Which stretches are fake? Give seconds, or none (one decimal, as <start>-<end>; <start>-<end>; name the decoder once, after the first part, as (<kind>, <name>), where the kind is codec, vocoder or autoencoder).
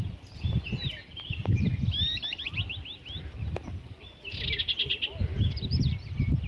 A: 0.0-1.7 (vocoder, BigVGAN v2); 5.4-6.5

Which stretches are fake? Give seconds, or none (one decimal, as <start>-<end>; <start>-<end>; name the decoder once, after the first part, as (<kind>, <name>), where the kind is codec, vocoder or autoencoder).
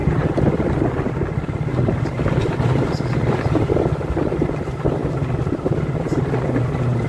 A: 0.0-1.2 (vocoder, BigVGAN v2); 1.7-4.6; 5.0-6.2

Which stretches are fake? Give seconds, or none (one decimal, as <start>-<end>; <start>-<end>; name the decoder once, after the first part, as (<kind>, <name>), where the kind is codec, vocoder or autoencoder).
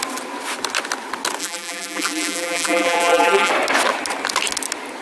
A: 1.4-3.5 (vocoder, BigVGAN v2)